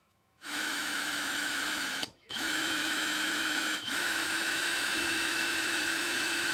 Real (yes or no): no